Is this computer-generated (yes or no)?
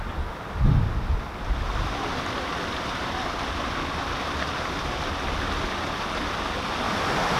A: no